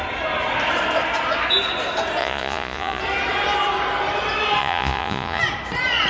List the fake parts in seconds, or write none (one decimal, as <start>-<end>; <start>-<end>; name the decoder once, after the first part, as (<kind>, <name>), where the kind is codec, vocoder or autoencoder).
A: 2.2-3.0 (vocoder, Vocos); 4.6-5.4